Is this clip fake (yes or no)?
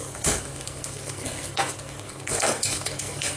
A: yes